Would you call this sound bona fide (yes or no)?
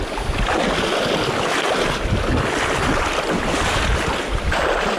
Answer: yes